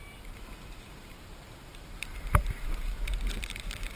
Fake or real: fake